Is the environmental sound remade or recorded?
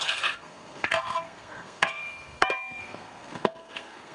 remade